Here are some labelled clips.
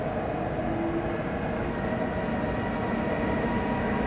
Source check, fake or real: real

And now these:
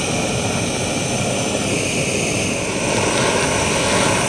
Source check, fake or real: real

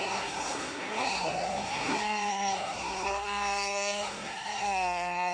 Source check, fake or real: fake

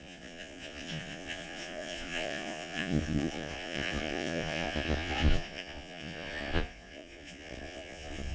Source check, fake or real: fake